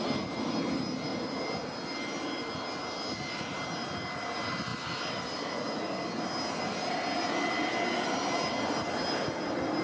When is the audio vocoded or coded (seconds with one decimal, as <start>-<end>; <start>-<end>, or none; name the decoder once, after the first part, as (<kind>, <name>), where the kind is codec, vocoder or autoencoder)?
none